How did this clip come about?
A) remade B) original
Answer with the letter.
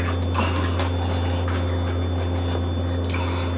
B